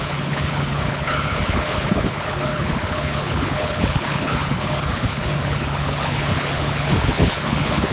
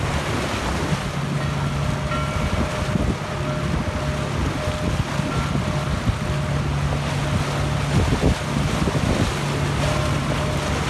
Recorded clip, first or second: second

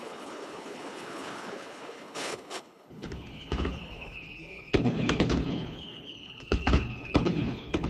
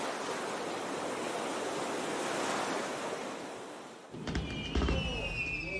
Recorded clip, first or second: second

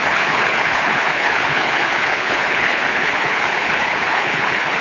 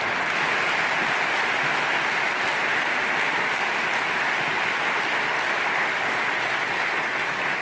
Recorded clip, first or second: second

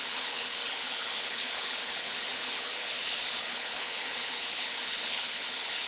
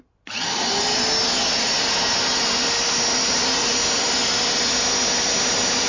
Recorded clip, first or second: second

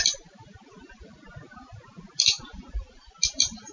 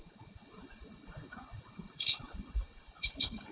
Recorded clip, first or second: first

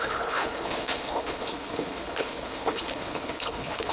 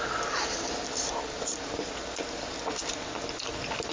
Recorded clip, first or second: second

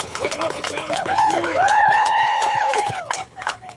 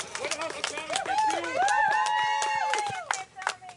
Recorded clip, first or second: second